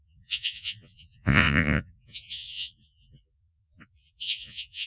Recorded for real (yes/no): no